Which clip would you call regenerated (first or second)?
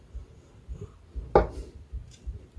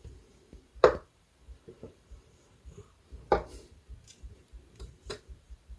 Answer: second